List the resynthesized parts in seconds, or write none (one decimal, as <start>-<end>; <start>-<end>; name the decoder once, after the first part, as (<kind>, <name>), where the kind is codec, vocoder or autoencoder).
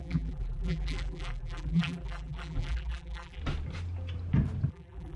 0.0-3.4 (vocoder, BigVGAN v2); 4.7-5.2